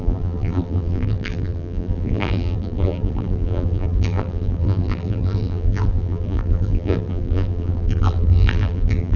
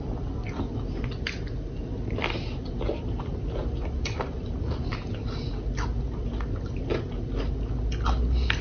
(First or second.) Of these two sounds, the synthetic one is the first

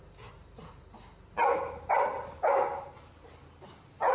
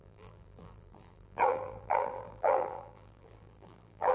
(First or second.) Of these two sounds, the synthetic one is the second